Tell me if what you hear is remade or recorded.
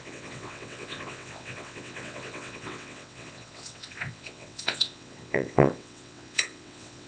remade